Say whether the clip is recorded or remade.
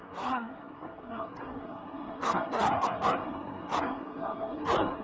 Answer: remade